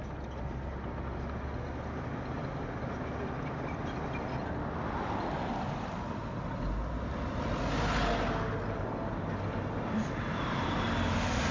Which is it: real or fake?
real